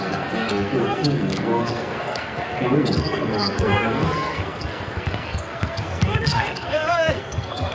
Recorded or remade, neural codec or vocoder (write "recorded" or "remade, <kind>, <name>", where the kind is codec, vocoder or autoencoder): remade, codec, SNAC